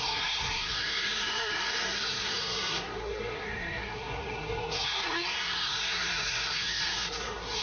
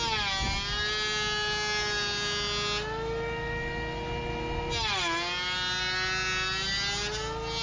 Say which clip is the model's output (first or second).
first